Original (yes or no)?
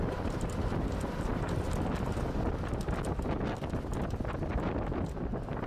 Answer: yes